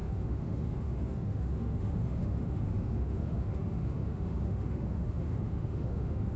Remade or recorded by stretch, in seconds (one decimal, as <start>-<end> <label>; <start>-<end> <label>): 0.0-6.4 remade